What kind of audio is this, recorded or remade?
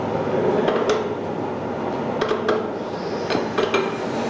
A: recorded